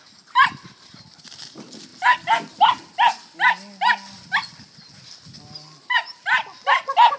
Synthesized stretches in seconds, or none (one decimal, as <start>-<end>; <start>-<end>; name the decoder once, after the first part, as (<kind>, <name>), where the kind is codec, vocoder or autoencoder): none